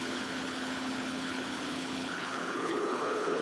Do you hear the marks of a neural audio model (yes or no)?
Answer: yes